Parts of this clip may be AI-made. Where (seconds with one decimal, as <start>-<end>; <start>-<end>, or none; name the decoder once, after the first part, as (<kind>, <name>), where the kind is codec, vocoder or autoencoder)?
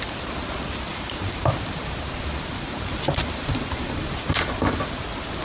0.9-4.1 (vocoder, BigVGAN v2)